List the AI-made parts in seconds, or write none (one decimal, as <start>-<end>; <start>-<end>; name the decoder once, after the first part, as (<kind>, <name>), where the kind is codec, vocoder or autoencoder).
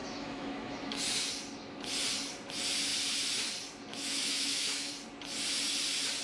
0.0-1.0 (autoencoder, DAC-VAE); 3.9-4.9